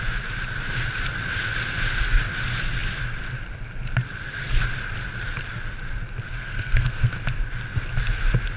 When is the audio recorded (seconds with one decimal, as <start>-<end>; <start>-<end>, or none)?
0.0-6.3; 7.1-8.6